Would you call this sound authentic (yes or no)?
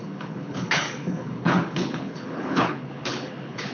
no